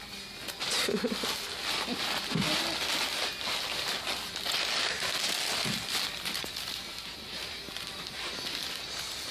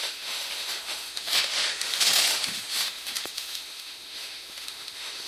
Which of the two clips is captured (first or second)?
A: first